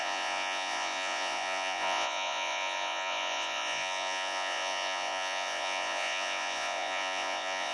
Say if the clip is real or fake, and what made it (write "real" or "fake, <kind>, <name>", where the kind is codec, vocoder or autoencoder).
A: fake, vocoder, Vocos